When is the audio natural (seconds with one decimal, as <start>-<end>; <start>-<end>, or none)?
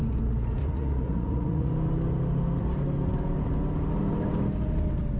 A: 0.0-0.6; 1.7-5.2